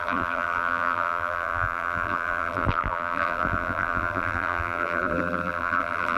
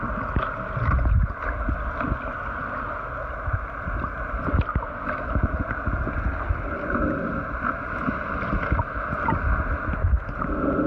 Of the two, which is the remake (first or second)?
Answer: first